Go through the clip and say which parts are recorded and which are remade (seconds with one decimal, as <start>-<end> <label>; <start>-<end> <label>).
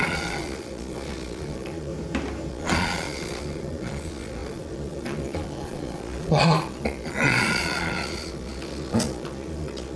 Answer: 0.0-1.9 remade; 1.9-2.5 recorded; 2.5-10.0 remade